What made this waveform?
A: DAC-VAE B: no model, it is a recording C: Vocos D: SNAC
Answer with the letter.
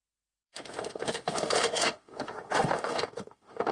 A